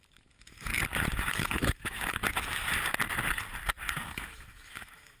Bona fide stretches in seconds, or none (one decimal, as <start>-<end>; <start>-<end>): 0.7-1.3; 2.2-3.9